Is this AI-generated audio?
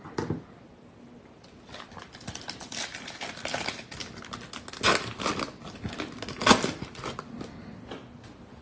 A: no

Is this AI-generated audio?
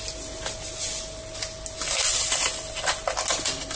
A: no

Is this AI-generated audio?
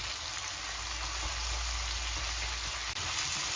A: no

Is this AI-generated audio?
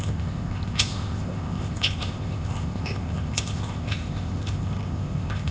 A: yes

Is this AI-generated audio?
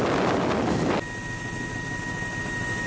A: no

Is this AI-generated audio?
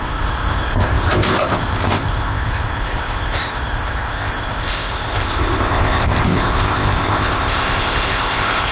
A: yes